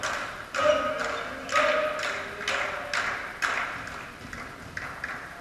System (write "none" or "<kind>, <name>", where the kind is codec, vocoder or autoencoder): none